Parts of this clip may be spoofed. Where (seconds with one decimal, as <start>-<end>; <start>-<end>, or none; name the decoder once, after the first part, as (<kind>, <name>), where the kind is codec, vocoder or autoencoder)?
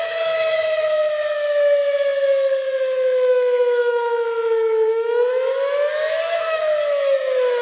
0.0-7.6 (autoencoder, DAC-VAE)